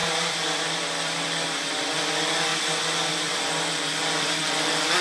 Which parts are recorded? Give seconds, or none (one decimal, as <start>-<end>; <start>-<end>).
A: 1.9-2.5; 3.7-5.0